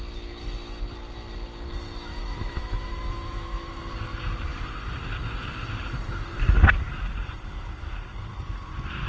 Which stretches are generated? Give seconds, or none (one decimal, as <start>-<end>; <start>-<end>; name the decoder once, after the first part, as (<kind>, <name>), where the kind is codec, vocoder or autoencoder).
2.1-3.7 (autoencoder, DAC-VAE)